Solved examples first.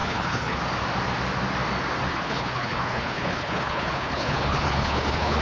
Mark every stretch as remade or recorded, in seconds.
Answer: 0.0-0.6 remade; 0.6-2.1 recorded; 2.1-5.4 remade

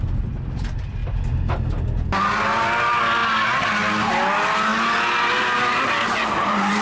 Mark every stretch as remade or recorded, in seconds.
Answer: 0.0-6.8 recorded

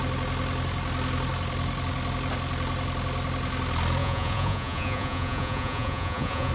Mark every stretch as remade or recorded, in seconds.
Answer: 0.0-4.0 recorded; 4.0-6.5 remade

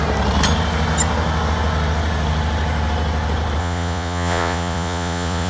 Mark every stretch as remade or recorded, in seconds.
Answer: 0.0-3.6 recorded; 3.6-5.5 remade

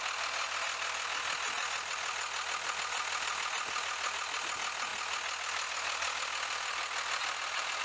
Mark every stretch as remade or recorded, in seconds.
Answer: 0.0-7.8 recorded

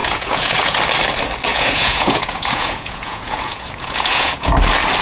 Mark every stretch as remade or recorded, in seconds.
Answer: 0.0-0.8 remade; 0.8-1.5 recorded; 1.5-4.5 remade; 4.5-5.0 recorded

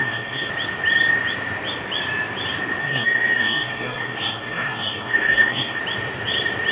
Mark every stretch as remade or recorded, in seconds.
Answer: 0.0-0.5 remade; 0.5-2.8 recorded; 2.8-5.8 remade; 5.8-6.7 recorded